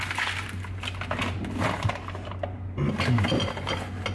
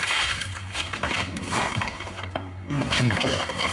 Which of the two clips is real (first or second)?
first